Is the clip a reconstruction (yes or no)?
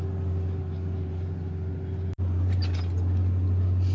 no